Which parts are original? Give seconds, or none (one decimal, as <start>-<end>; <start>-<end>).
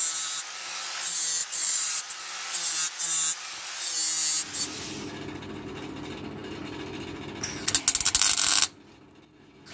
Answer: 0.0-1.4; 2.0-9.7